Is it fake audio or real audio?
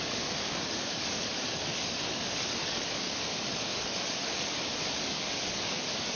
fake